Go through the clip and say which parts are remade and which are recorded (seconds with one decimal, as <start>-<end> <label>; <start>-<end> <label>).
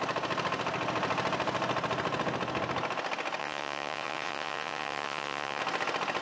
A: 0.0-3.4 recorded; 3.4-5.6 remade; 5.6-6.2 recorded